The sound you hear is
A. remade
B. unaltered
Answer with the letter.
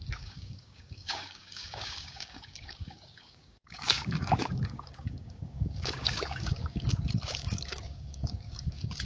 A